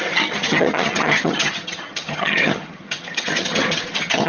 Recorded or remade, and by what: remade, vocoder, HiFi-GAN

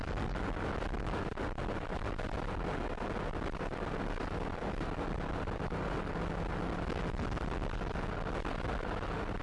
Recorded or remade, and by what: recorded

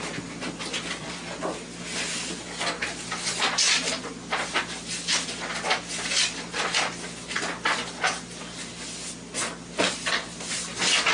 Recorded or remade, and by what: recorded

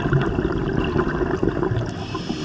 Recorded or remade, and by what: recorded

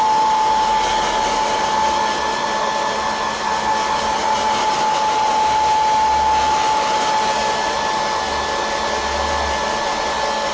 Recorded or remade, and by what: recorded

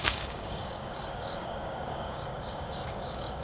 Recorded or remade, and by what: remade, codec, DAC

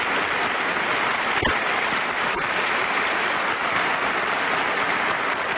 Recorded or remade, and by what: recorded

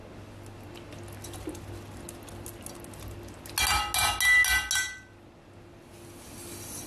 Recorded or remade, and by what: recorded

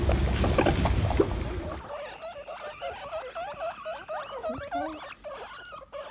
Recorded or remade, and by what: recorded